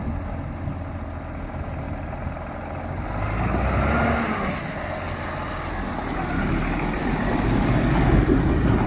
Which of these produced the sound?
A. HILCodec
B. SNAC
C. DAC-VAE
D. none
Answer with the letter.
D